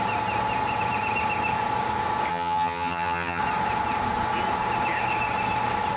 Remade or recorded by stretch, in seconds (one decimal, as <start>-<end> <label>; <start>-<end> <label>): 0.0-2.3 recorded; 2.3-3.4 remade; 3.4-6.0 recorded